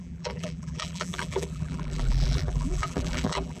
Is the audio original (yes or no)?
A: no